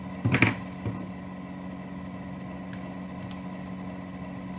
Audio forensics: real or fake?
real